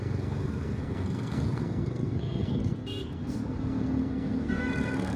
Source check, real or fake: fake